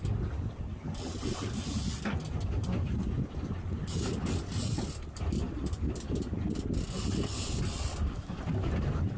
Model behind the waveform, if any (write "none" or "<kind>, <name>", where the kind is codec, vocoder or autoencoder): none